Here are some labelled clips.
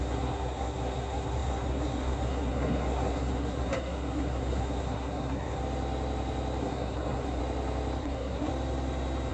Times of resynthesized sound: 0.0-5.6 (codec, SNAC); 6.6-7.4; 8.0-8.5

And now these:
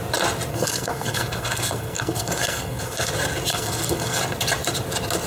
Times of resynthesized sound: 0.5-3.1 (codec, SNAC); 3.5-4.2